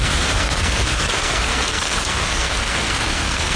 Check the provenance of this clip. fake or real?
fake